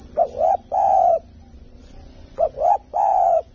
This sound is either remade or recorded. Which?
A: remade